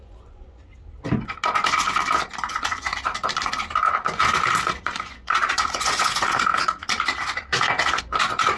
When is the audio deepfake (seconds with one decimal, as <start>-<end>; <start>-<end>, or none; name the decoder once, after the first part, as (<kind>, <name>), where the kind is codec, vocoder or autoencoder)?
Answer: 0.0-0.7 (vocoder, Vocos); 2.5-2.9; 4.8-6.5; 8.0-8.6